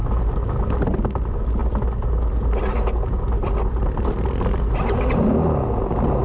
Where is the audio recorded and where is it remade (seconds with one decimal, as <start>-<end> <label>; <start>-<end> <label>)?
0.0-6.2 recorded

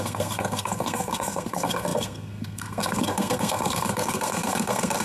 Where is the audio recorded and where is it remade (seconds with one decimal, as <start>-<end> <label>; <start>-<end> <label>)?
0.0-5.0 remade

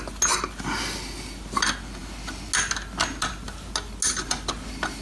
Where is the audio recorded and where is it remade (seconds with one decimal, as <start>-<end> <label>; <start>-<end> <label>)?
0.0-5.0 recorded

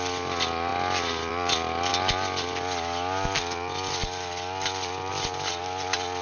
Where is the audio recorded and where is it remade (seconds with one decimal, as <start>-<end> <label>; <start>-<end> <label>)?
0.0-6.2 recorded

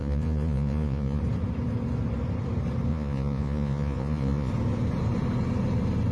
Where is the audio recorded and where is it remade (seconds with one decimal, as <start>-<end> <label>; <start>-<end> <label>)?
0.0-1.2 remade; 1.2-2.9 recorded; 2.9-4.5 remade; 4.5-6.1 recorded

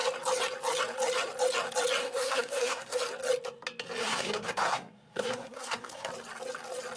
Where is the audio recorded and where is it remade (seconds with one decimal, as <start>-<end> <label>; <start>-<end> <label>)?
0.0-2.0 recorded; 2.0-3.0 remade; 3.0-4.0 recorded; 4.0-6.1 remade; 6.1-7.0 recorded